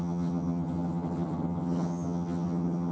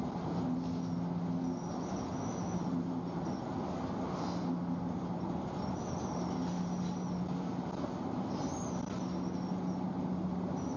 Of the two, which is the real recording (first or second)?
second